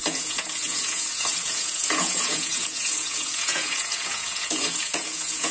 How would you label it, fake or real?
fake